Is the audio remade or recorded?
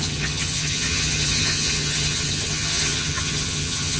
remade